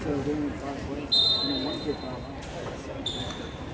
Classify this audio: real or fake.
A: real